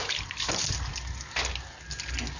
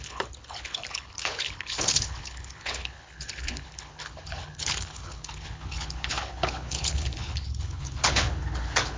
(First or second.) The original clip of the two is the first